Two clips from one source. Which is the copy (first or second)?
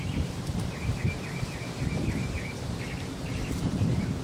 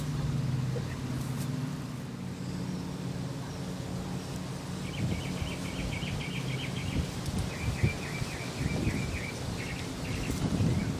first